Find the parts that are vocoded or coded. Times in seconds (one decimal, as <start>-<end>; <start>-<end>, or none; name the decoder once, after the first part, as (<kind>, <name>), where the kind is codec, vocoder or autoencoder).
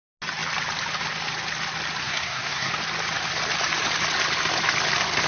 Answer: 2.0-2.7 (codec, SNAC)